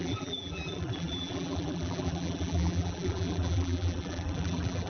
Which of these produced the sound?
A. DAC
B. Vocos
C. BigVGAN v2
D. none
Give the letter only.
C